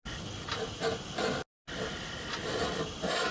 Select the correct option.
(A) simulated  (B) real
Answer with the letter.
B